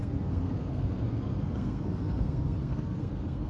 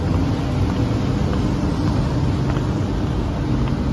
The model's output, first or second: first